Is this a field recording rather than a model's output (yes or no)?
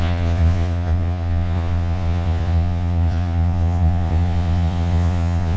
no